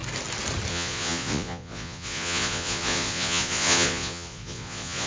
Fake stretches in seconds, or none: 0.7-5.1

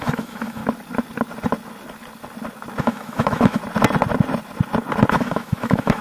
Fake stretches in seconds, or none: 0.0-0.6; 2.8-3.6; 5.1-6.0

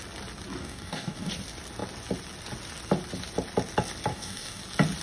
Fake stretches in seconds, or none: 0.6-1.3; 4.1-4.6

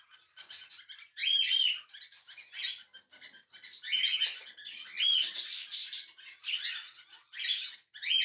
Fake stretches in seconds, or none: none

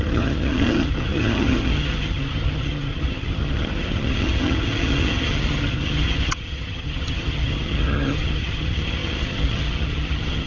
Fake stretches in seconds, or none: 0.0-10.5

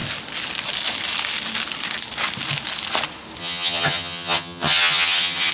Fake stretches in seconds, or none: 3.4-5.5

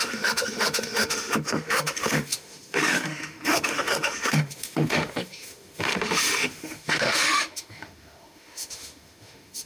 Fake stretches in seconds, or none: 0.0-9.7